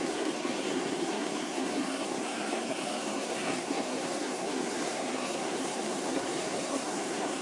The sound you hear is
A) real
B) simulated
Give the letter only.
B